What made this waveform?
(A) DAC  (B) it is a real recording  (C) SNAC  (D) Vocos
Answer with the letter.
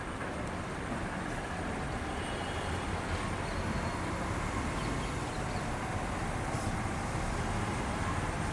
B